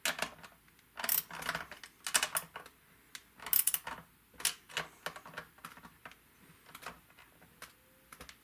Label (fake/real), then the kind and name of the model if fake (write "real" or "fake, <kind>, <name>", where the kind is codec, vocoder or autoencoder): real